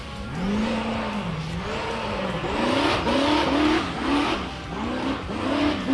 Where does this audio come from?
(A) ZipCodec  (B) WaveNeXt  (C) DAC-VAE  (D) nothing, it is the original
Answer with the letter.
D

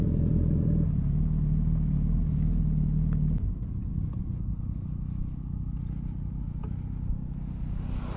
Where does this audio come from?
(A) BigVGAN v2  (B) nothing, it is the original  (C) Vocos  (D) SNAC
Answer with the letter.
B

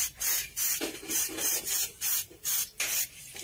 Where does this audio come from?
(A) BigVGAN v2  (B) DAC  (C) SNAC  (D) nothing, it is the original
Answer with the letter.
A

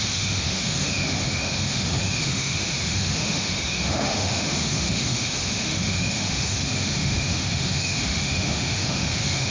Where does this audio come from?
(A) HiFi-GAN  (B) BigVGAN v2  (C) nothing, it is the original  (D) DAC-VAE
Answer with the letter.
D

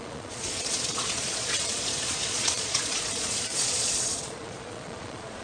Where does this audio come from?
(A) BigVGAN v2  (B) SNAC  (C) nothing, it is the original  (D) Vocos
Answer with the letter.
D